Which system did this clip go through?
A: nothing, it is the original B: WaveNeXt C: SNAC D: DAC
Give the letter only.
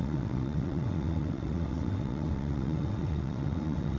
B